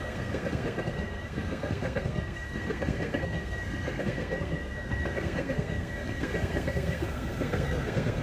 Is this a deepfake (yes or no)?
yes